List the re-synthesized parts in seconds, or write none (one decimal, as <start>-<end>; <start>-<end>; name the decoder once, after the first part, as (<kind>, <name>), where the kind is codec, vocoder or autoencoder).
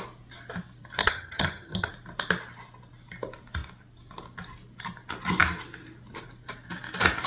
1.0-1.9 (vocoder, HiFi-GAN)